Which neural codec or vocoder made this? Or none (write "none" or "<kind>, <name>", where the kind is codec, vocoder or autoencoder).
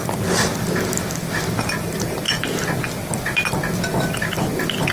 none